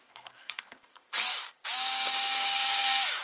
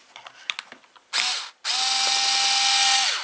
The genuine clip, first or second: second